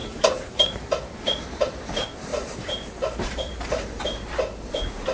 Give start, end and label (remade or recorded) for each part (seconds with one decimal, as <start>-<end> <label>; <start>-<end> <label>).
0.0-0.9 remade; 0.9-2.3 recorded; 2.3-4.0 remade; 4.0-5.1 recorded